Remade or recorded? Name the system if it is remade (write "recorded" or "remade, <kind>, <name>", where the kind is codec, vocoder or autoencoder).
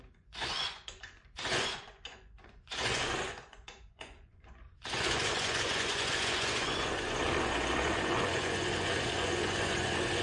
remade, vocoder, Vocos